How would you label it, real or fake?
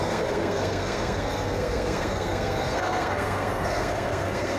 fake